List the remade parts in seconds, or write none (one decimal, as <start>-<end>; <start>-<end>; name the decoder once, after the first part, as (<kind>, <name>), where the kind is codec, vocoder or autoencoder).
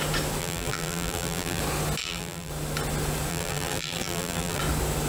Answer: 0.4-1.6 (vocoder, BigVGAN v2); 2.0-2.5; 3.3-4.6